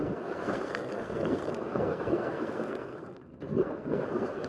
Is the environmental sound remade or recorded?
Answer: remade